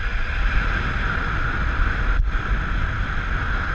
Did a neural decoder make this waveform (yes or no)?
no